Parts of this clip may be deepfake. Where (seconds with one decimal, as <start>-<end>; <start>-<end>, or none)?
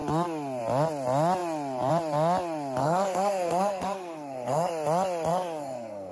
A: 2.8-4.7; 5.3-6.1